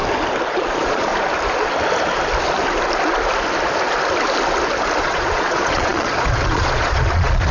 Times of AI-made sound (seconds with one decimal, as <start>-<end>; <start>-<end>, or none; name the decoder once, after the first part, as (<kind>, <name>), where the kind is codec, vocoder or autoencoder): 0.5-1.1 (vocoder, Vocos); 5.0-7.5